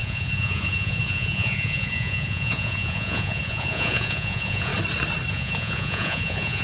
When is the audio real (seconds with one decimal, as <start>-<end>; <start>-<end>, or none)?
4.7-5.3